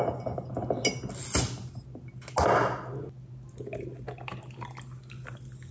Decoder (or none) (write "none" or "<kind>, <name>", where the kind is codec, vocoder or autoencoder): none